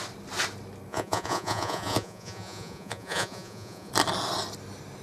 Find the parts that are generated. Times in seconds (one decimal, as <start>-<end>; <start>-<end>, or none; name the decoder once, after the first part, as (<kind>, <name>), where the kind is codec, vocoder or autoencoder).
0.9-3.9 (vocoder, Vocos)